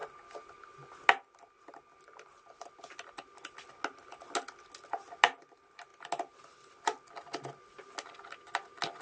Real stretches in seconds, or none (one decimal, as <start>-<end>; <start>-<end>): 0.0-9.0